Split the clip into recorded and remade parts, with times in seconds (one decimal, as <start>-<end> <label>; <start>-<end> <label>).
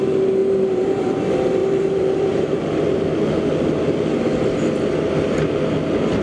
0.0-0.4 recorded; 0.4-1.2 remade; 1.2-1.6 recorded; 1.6-2.6 remade; 2.6-6.2 recorded